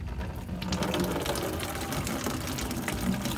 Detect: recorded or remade recorded